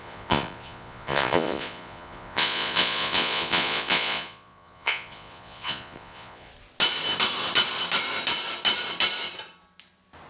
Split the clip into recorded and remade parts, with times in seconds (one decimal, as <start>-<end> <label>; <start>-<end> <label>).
0.0-6.5 remade; 6.5-10.3 recorded